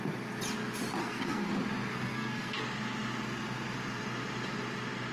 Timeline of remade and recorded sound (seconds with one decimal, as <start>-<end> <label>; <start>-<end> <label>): 0.0-1.0 recorded; 1.0-1.5 remade; 1.5-1.9 recorded; 1.9-2.6 remade; 2.6-5.1 recorded

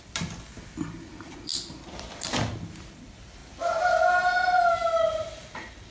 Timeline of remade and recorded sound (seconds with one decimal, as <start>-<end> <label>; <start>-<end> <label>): 0.0-3.4 remade; 3.4-4.7 recorded; 4.7-5.9 remade

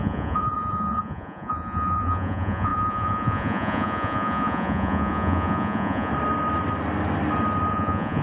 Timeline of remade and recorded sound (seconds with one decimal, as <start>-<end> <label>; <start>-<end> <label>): 0.0-6.1 remade; 6.1-7.7 recorded; 7.7-8.2 remade

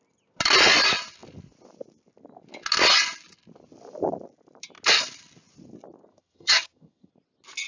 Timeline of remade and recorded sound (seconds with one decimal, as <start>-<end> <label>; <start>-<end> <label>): 0.0-6.1 recorded; 6.1-7.1 remade; 7.1-7.7 recorded

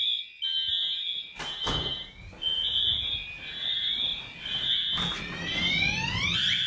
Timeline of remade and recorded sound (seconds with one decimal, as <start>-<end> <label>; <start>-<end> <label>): 0.0-6.7 recorded